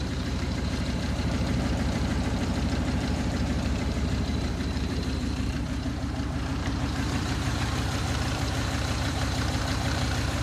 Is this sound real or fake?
fake